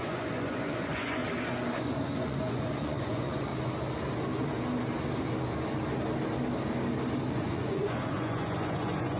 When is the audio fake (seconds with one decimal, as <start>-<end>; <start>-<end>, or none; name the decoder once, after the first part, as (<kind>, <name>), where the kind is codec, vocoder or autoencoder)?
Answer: 0.0-1.2 (vocoder, Vocos); 1.8-3.5; 7.3-9.2